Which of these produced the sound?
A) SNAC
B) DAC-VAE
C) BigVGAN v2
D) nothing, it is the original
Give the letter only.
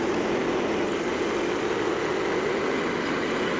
D